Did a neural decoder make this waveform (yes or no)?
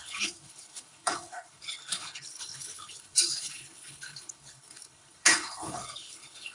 yes